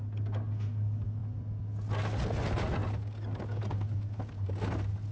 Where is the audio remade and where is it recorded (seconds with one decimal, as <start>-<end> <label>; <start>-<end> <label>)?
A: 0.0-5.1 recorded